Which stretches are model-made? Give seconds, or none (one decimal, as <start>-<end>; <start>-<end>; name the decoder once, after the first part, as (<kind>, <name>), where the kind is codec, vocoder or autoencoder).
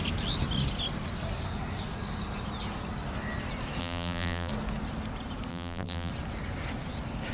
3.8-4.5 (vocoder, BigVGAN v2); 5.5-6.1